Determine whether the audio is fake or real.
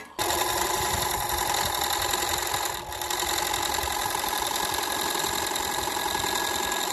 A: real